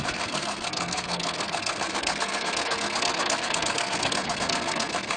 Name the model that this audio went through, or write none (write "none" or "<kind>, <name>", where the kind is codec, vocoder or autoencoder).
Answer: codec, SNAC